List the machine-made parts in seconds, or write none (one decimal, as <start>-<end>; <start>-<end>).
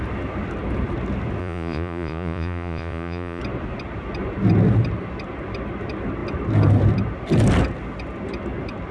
1.4-3.4